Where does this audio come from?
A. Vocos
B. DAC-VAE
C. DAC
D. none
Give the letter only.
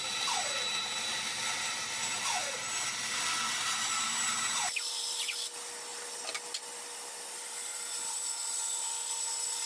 D